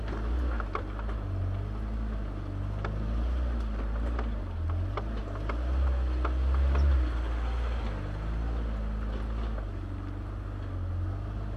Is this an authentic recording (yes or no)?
yes